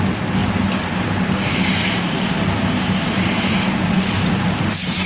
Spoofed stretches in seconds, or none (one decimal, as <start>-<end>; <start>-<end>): none